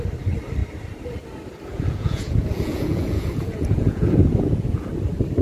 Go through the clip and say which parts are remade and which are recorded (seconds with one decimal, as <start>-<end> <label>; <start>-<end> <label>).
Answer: 0.0-1.7 recorded; 1.7-4.9 remade; 4.9-5.4 recorded

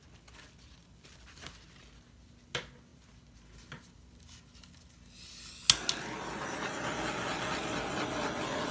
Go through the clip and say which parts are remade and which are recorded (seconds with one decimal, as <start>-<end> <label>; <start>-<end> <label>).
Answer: 0.0-8.7 recorded

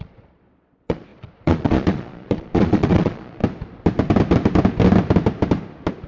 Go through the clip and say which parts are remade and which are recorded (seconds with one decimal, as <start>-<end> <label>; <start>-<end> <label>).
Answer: 0.0-3.4 remade; 3.4-6.1 recorded

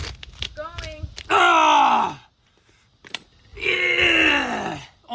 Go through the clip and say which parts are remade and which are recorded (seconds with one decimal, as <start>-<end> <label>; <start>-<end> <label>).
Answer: 0.0-5.1 recorded